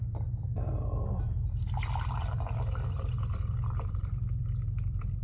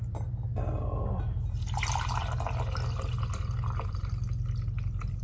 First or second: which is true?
second